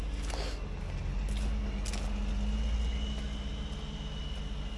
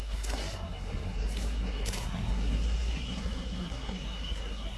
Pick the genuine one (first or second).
first